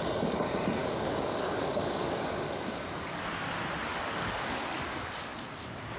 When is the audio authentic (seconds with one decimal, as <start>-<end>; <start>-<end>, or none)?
0.0-0.8; 3.2-3.9; 5.1-6.0

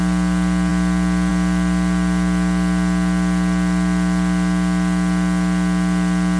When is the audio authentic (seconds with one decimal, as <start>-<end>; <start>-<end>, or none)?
0.0-6.4

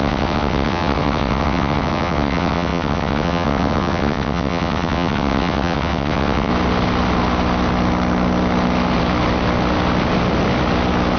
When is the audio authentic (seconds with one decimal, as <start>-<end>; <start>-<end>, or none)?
6.5-11.2

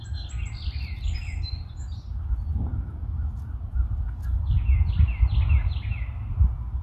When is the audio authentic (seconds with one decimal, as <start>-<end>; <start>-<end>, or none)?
0.0-6.8

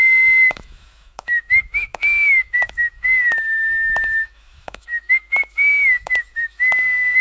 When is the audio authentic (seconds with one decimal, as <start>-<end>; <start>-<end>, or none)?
none